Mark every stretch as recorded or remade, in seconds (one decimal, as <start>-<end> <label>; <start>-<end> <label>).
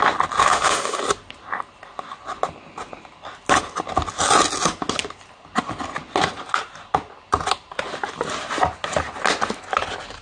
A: 0.0-0.4 recorded; 0.4-1.0 remade; 1.0-10.2 recorded